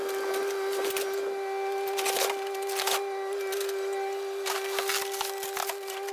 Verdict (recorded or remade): recorded